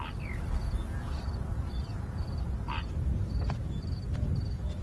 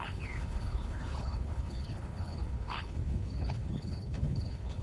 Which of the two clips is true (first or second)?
first